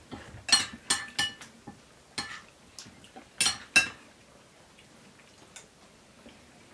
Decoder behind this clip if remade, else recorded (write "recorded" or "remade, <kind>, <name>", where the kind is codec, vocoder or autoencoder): recorded